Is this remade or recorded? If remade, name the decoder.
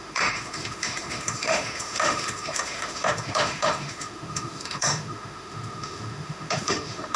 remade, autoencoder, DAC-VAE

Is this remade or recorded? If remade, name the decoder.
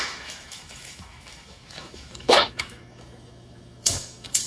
remade, autoencoder, DAC-VAE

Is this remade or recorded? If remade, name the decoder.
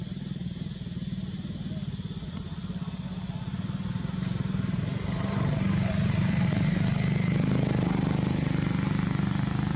recorded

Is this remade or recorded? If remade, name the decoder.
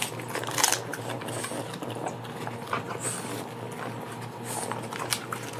recorded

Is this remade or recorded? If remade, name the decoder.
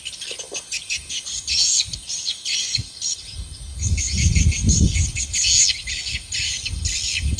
recorded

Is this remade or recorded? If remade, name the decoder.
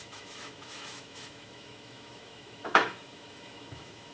remade, autoencoder, DAC-VAE